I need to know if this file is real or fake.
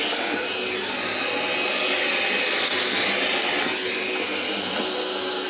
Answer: real